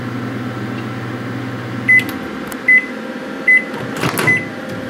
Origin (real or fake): real